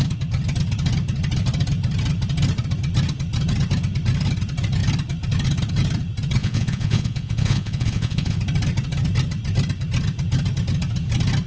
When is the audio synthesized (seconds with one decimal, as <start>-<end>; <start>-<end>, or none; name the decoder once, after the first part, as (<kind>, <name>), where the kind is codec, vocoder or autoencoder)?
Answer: 6.4-8.4 (vocoder, Vocos)